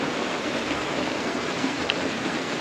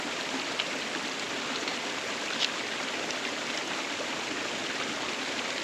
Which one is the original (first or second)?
second